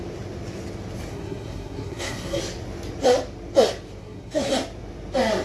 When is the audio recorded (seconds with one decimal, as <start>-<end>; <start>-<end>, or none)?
0.0-1.1; 2.4-4.0; 4.5-5.4